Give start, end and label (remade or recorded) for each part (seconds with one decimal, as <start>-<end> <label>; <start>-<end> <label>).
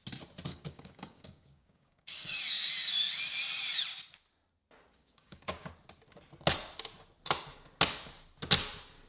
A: 0.0-0.5 recorded; 0.5-2.4 remade; 2.4-5.0 recorded; 5.0-5.7 remade; 5.7-9.1 recorded